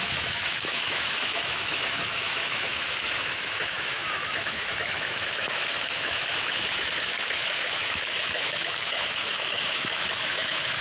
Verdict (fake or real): fake